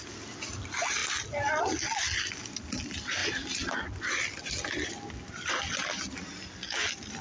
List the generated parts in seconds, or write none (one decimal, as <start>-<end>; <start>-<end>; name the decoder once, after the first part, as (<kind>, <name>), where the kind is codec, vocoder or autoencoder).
none